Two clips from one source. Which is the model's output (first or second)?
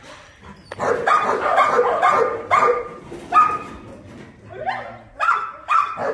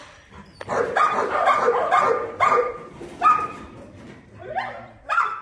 second